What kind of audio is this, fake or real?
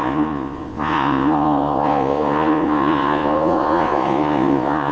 fake